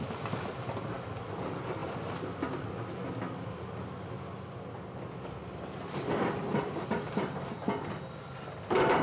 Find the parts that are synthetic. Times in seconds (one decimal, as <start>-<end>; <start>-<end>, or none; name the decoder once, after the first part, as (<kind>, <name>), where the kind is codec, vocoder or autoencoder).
none